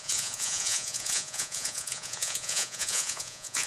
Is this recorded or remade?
remade